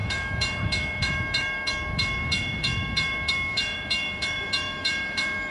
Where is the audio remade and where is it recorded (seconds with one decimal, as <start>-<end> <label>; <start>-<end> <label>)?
0.0-5.5 remade